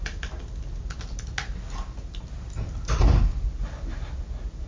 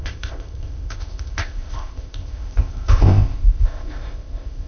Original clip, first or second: first